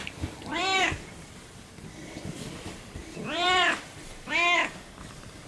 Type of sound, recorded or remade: remade